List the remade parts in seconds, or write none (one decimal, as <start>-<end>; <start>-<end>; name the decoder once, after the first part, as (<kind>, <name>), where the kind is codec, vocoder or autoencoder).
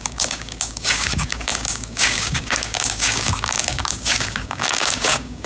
0.0-5.5 (codec, DAC)